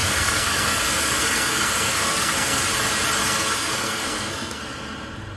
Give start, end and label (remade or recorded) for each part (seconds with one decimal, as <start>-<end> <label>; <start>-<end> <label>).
0.0-2.6 remade; 2.6-3.2 recorded; 3.2-4.6 remade; 4.6-5.4 recorded